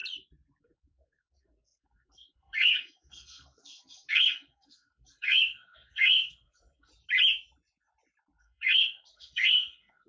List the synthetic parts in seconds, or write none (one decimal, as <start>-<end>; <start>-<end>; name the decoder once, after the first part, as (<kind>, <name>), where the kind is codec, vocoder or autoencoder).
0.6-6.9 (codec, SNAC); 8.4-10.1